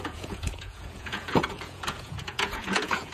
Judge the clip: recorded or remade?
remade